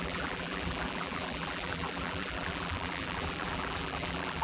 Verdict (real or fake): fake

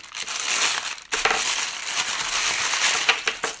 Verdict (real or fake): real